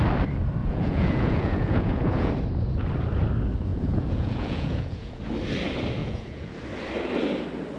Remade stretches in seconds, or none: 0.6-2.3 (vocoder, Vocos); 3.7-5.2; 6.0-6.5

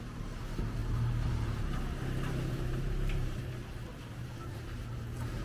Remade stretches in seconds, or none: 0.0-0.8 (vocoder, BigVGAN v2); 2.5-5.4

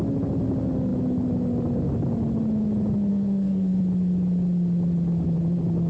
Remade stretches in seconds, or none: 3.1-3.8 (codec, SNAC)

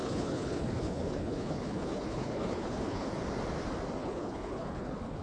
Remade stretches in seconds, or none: 0.0-3.1 (codec, HILCodec); 4.0-5.2

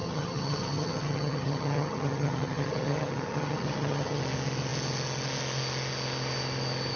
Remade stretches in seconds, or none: 0.0-4.2 (vocoder, HiFi-GAN)

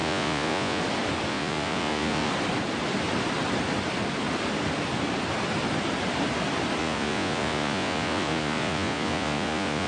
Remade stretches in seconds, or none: 0.0-0.8 (vocoder, Vocos); 1.3-2.3; 6.8-9.9

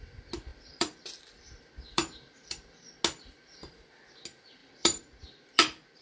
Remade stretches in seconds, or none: 0.5-2.8 (vocoder, BigVGAN v2); 4.6-6.0

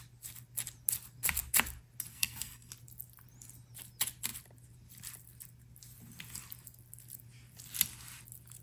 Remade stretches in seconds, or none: 2.1-2.7 (codec, SNAC)